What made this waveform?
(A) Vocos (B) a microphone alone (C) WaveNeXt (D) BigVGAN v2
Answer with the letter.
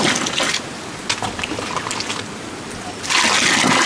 B